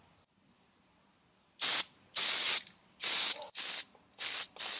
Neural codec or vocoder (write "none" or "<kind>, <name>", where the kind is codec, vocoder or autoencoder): none